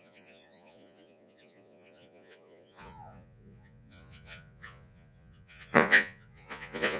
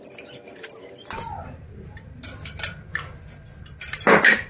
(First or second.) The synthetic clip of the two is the first